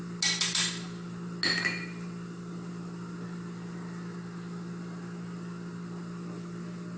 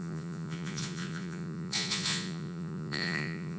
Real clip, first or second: first